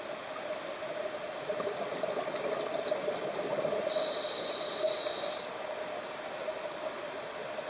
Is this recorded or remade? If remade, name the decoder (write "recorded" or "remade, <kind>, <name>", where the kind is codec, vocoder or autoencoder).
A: recorded